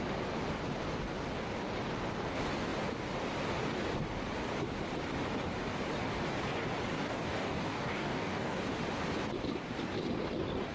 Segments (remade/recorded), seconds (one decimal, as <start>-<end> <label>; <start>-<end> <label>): 0.0-6.9 recorded; 6.9-8.6 remade; 8.6-10.7 recorded